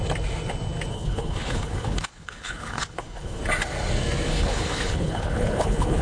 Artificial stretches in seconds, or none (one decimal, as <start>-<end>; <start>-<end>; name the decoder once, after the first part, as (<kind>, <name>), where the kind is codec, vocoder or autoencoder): 0.9-3.4 (codec, HILCodec); 4.3-6.0